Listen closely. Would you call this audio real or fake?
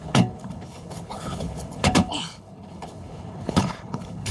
fake